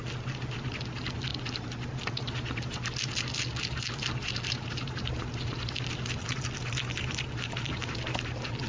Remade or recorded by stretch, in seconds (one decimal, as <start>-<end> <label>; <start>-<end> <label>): 0.0-8.7 recorded